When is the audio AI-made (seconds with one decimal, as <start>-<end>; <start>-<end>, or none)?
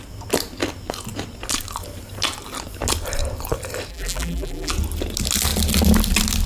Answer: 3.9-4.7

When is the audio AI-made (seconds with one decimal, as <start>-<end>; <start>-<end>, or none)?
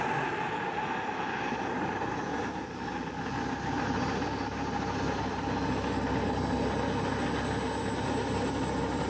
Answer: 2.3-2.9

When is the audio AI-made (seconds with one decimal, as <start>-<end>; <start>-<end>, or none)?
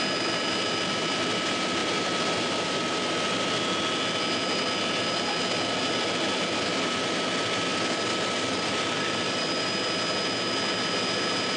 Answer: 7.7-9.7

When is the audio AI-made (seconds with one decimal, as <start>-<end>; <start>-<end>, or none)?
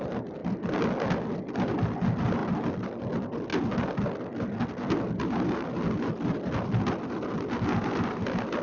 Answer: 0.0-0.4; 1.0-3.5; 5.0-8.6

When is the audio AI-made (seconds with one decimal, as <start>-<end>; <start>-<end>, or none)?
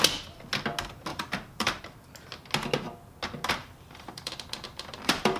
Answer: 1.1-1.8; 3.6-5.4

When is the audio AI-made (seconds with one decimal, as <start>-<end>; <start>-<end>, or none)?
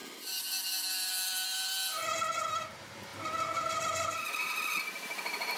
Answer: 2.5-5.6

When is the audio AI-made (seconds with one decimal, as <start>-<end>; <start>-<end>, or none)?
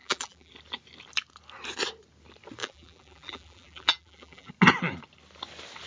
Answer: 0.0-0.5; 2.6-4.5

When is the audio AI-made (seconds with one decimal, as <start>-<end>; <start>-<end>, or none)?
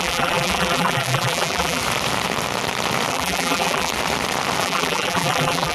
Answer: 0.0-1.8; 3.1-3.9; 4.6-5.7